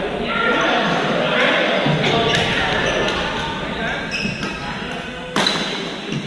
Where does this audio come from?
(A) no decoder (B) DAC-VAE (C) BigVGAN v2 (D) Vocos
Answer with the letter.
A